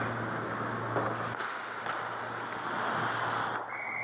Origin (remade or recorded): recorded